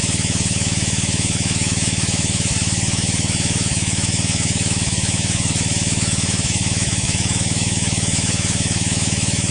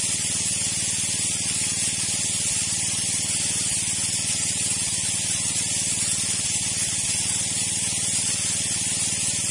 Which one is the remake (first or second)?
first